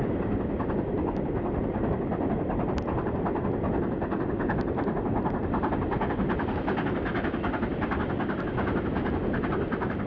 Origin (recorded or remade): recorded